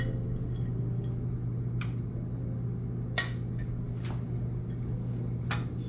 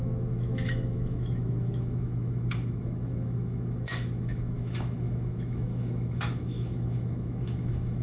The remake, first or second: second